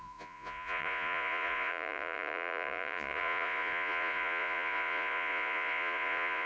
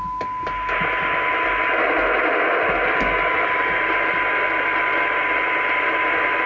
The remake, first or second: first